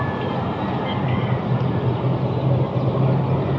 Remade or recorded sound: recorded